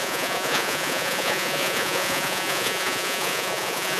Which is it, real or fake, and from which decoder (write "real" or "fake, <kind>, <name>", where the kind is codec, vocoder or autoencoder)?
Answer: fake, vocoder, Vocos